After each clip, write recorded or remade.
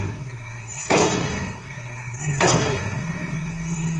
remade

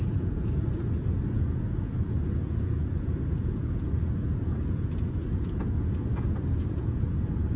remade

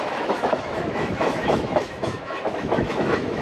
remade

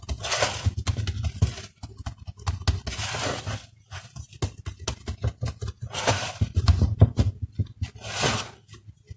recorded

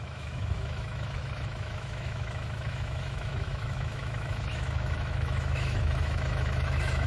remade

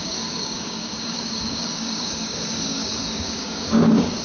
remade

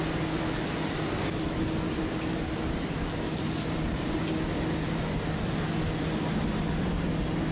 recorded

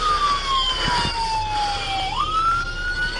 recorded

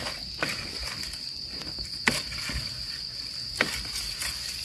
recorded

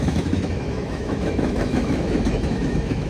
remade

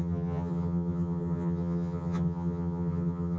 remade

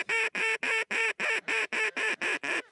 remade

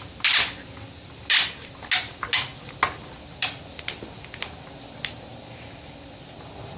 recorded